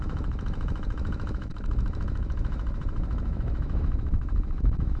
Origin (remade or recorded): remade